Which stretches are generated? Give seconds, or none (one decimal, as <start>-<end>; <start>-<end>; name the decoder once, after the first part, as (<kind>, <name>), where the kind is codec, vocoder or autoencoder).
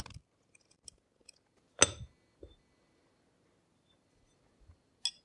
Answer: none